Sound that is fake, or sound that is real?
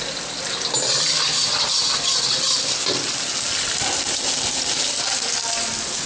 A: real